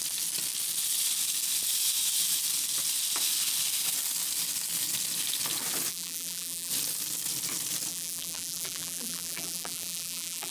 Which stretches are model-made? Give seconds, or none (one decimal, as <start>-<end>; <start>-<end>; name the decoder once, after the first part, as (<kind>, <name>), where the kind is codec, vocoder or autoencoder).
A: 5.9-6.7 (vocoder, BigVGAN v2); 7.9-10.5